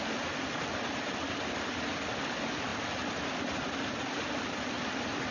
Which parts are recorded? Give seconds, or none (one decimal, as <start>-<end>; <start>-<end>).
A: 0.0-5.3